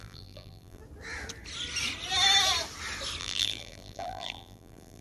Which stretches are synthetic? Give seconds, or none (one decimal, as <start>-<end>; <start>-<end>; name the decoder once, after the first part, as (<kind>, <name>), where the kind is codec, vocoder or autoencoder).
0.0-0.8 (vocoder, BigVGAN v2); 3.2-5.0